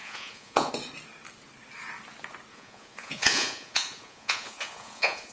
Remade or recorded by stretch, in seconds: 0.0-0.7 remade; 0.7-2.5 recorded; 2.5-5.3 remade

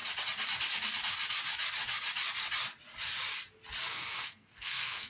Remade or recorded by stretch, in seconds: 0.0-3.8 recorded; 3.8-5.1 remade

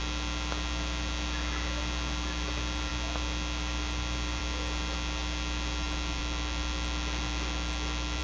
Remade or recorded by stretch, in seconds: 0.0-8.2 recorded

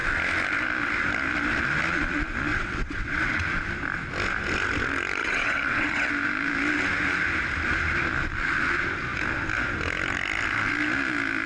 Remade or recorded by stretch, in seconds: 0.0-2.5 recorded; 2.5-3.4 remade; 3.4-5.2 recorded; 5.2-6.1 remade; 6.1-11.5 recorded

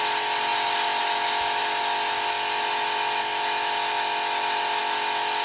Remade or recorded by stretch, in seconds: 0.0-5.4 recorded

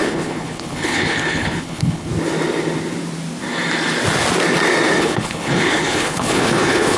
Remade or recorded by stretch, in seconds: 0.0-2.1 remade; 2.1-5.0 recorded; 5.0-7.0 remade

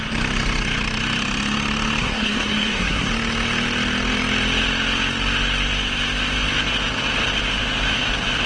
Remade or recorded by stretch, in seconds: 0.0-2.0 recorded; 2.0-3.1 remade; 3.1-8.5 recorded